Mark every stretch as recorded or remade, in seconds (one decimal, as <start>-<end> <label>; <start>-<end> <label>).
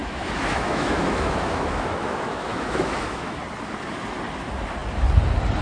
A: 0.0-3.4 remade; 3.4-5.6 recorded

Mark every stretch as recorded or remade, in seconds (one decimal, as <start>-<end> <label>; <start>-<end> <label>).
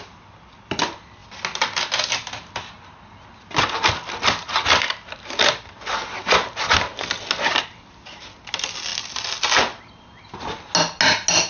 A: 0.0-11.5 recorded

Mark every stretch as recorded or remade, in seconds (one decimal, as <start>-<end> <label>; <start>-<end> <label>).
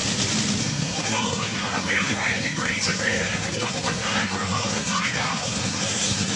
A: 0.0-0.6 recorded; 0.6-6.4 remade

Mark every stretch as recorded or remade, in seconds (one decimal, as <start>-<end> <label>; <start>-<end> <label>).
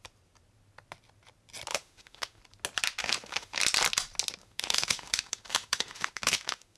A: 0.0-1.7 recorded; 1.7-2.4 remade; 2.4-3.0 recorded; 3.0-3.6 remade; 3.6-4.4 recorded; 4.4-6.8 remade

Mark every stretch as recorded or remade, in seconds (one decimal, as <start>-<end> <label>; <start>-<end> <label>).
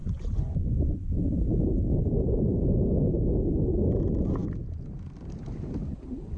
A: 0.0-1.2 remade; 1.2-6.4 recorded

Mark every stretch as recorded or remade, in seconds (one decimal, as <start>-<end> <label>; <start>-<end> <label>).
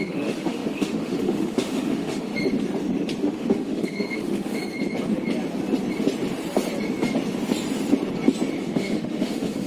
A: 0.0-2.3 remade; 2.3-3.2 recorded; 3.2-4.6 remade; 4.6-8.6 recorded; 8.6-9.7 remade